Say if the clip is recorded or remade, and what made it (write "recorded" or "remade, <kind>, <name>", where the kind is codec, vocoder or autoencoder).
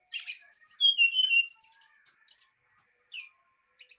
recorded